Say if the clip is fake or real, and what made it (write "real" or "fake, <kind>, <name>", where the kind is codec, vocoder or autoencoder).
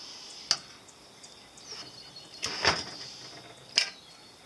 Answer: real